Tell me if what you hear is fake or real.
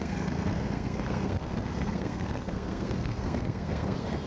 fake